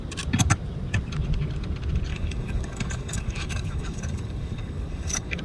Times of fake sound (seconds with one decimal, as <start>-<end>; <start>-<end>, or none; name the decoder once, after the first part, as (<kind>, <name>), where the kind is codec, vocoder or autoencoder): 2.1-5.4 (codec, DAC)